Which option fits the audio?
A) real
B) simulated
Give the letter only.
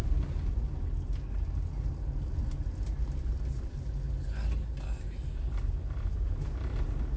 A